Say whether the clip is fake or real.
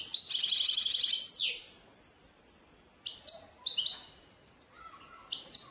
real